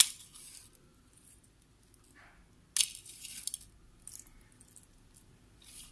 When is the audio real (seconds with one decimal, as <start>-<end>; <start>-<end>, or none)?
0.0-5.9